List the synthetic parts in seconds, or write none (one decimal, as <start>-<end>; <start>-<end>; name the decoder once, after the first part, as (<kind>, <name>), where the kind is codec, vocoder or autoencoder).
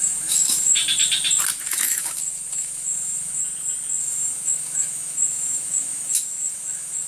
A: 0.0-0.8 (autoencoder, DAC-VAE); 1.6-3.4; 4.0-7.1